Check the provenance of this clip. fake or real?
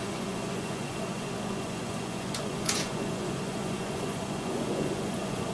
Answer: fake